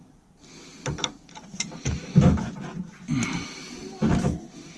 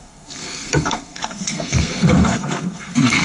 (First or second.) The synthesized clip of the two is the second